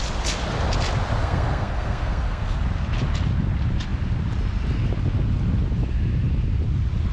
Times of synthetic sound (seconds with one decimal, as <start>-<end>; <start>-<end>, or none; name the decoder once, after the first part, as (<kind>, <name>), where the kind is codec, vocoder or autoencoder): 1.2-2.6 (codec, SNAC)